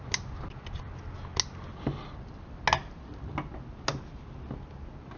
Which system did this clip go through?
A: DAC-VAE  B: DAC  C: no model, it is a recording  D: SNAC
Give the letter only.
C